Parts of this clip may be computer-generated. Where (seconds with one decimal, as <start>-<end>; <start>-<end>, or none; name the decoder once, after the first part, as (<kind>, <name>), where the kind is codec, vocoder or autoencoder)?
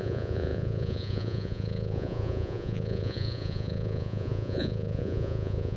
0.0-5.8 (vocoder, Vocos)